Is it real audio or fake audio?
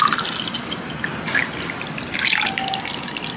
real